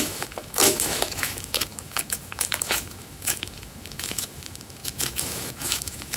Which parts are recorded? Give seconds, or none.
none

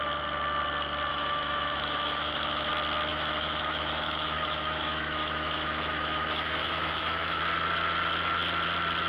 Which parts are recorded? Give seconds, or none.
0.0-1.1; 2.7-3.1; 7.4-9.1